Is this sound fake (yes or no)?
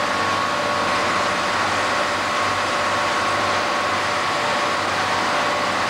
no